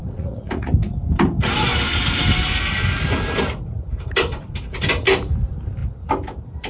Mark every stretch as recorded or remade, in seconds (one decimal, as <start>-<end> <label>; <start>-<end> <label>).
0.0-0.7 remade; 0.7-6.7 recorded